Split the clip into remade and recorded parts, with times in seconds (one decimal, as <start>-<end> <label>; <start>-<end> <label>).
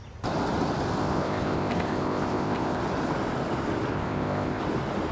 0.0-1.0 recorded; 1.0-2.8 remade; 2.8-3.9 recorded; 3.9-4.6 remade; 4.6-5.1 recorded